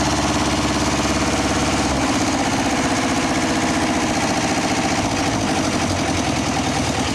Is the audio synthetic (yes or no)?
no